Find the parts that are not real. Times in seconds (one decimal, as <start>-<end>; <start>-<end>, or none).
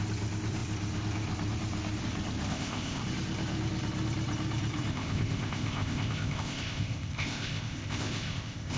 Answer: 2.5-3.0; 4.9-8.8